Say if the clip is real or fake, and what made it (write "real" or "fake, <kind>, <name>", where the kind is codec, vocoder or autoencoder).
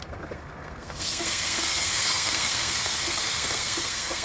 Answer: fake, codec, SNAC